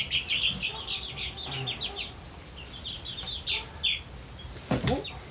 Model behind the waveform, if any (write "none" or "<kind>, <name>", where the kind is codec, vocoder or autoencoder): none